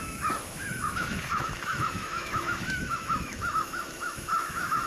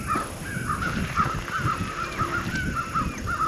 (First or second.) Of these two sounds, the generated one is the first